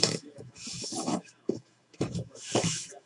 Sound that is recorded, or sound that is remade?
remade